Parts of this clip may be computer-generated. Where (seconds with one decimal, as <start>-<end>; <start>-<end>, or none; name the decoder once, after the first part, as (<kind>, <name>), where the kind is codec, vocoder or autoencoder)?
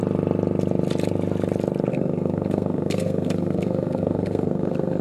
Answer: 1.9-5.0 (codec, SNAC)